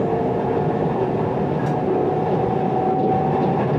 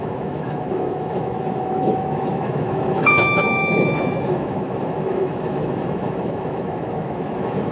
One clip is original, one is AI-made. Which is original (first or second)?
first